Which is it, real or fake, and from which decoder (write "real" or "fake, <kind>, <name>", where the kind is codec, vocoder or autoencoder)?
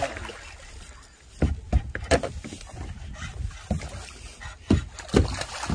real